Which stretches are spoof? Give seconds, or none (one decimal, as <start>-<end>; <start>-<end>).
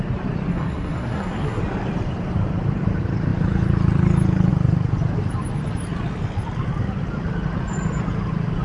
0.5-1.6